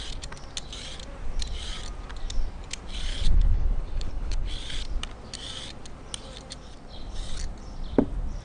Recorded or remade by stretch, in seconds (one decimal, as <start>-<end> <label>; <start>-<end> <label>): 0.0-3.1 recorded; 3.1-4.5 remade; 4.5-8.4 recorded